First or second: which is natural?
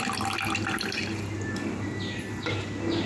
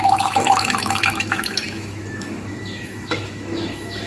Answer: first